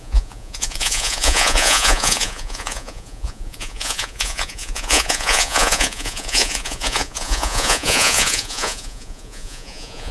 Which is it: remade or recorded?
remade